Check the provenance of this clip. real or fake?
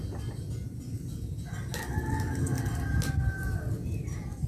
real